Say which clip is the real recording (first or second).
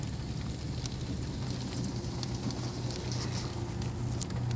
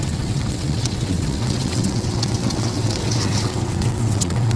first